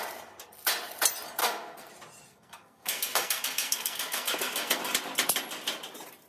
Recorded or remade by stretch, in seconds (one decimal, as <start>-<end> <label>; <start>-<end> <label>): 0.0-1.4 recorded; 1.4-1.9 remade; 1.9-2.3 recorded; 2.3-4.8 remade; 4.8-6.3 recorded